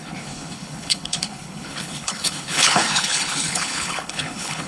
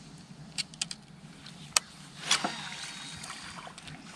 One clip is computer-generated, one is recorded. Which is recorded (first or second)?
second